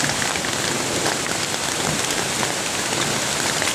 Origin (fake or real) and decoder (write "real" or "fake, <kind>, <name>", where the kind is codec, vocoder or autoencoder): real